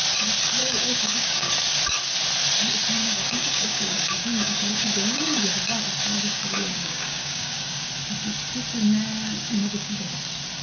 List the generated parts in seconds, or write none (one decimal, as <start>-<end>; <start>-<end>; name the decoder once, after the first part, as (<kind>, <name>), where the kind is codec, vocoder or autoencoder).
0.6-1.5 (codec, DAC); 3.0-5.5; 6.2-7.9; 9.6-10.1